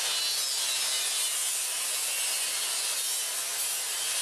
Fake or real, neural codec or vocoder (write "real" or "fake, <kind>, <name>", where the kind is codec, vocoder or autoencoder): real